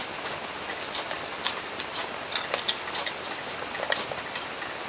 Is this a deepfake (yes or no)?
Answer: no